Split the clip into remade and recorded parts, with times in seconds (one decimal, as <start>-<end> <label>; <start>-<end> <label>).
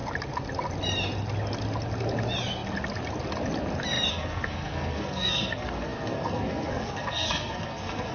0.0-4.1 recorded; 4.1-8.1 remade